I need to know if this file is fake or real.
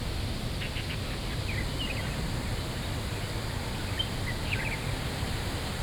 real